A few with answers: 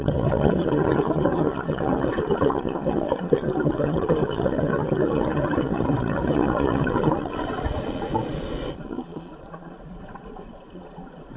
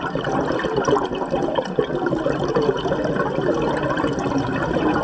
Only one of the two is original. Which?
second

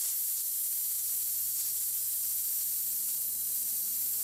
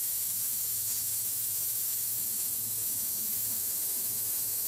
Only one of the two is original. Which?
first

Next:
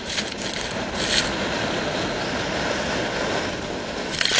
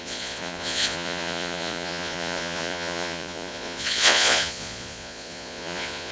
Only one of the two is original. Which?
first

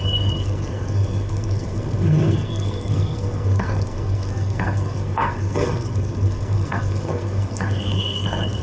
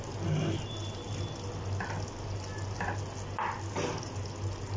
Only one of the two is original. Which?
second